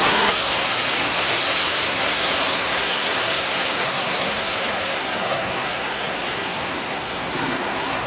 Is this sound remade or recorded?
remade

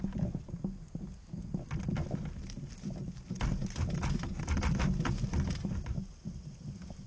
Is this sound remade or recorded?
recorded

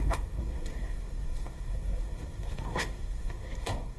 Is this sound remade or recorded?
remade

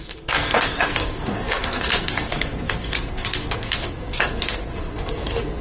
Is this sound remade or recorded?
remade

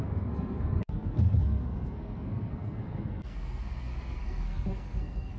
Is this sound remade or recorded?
remade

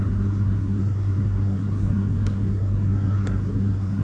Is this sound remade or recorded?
remade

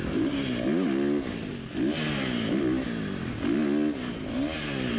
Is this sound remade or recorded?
recorded